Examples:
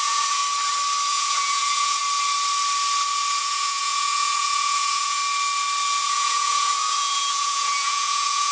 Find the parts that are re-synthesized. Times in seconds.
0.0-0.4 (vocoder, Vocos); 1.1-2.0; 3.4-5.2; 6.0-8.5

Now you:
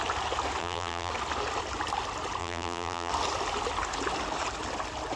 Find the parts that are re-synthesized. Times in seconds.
0.6-1.1 (vocoder, BigVGAN v2); 2.4-3.1

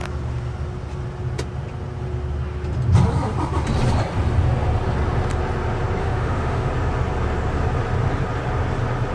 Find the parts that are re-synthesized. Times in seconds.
6.0-6.7 (autoencoder, DAC-VAE)

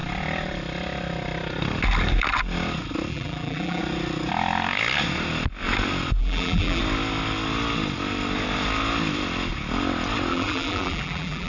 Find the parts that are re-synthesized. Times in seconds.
3.1-3.8 (vocoder, BigVGAN v2); 6.2-6.8; 10.3-11.5

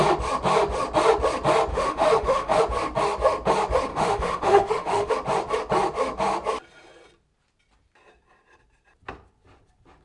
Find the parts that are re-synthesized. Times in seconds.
1.7-2.6 (autoencoder, DAC-VAE); 3.9-5.1

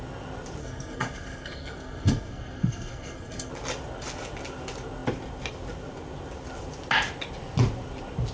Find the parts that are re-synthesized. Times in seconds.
0.6-3.5 (codec, SNAC)